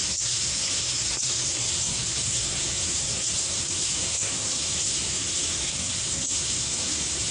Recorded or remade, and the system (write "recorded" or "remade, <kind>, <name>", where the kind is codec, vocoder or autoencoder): remade, codec, SNAC